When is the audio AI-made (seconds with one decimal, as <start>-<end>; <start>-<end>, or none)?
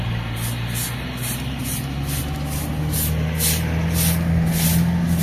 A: 1.6-2.2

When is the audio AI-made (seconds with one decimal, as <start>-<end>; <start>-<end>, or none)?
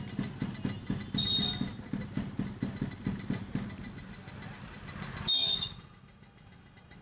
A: 5.3-7.0